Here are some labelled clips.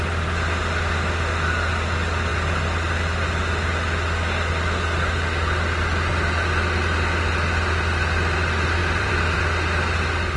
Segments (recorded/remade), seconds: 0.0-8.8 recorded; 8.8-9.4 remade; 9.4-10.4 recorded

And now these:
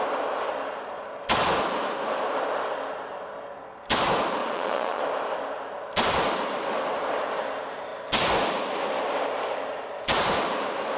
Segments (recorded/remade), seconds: 0.0-4.4 recorded; 4.4-5.0 remade; 5.0-11.0 recorded

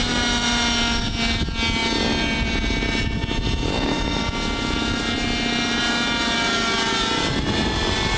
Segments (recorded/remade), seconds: 0.0-8.2 recorded

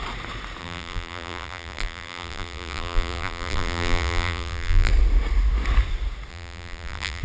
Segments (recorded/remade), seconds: 0.0-0.6 recorded; 0.6-4.9 remade; 4.9-6.3 recorded; 6.3-7.2 remade